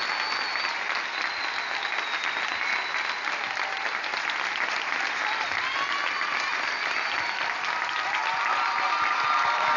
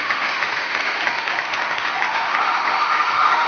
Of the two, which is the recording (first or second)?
first